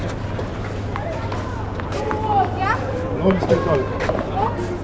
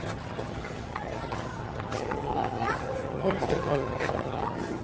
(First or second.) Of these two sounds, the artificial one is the second